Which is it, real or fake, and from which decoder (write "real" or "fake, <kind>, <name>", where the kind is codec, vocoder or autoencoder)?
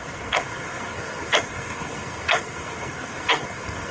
fake, codec, SNAC